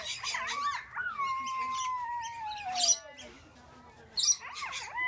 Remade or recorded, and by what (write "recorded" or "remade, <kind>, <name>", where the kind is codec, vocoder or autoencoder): recorded